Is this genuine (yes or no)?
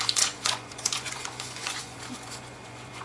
no